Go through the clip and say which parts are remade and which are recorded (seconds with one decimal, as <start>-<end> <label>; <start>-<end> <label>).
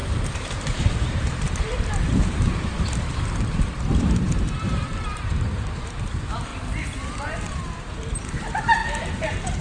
0.0-2.7 remade; 2.7-3.9 recorded; 3.9-6.5 remade; 6.5-7.5 recorded; 7.5-8.8 remade; 8.8-9.6 recorded